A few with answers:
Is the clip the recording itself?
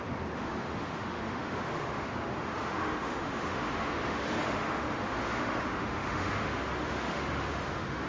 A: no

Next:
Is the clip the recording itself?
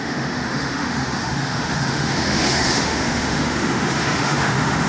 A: no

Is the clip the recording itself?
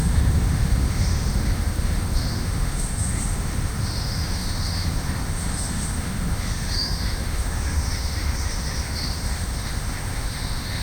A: no